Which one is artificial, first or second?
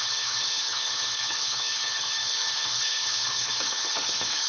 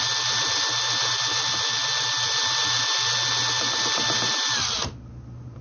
first